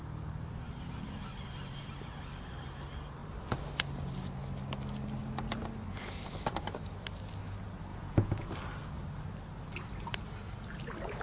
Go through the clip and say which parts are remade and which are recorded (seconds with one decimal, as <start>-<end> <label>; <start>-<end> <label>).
0.0-7.9 recorded; 7.9-8.5 remade; 8.5-11.2 recorded